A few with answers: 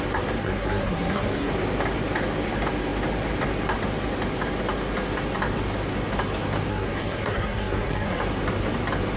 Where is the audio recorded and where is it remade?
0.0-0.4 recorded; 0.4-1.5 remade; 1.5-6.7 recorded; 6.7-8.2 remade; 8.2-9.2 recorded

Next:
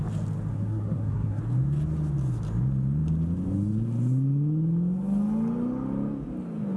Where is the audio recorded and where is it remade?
0.0-0.5 recorded; 0.5-1.4 remade; 1.4-6.8 recorded

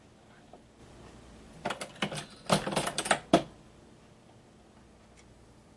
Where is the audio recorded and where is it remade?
0.0-5.8 recorded